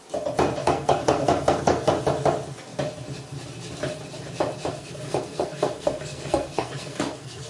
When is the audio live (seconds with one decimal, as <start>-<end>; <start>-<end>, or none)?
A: 0.0-0.6; 1.9-4.7